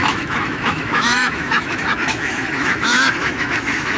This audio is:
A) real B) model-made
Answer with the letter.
B